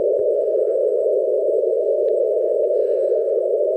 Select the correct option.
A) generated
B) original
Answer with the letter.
A